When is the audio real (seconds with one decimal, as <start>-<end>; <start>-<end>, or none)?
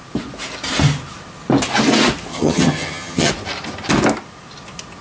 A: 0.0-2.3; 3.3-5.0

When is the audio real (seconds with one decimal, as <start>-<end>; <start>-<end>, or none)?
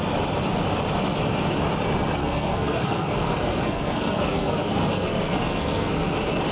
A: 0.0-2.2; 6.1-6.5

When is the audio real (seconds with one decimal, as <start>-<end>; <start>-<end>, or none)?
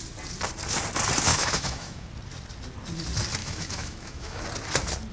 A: 0.0-1.3; 2.1-3.4; 4.4-5.1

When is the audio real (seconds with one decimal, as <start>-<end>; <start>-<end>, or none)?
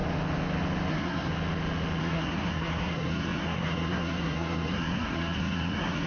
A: 0.0-0.9; 1.3-2.0